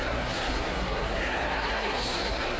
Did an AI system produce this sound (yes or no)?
yes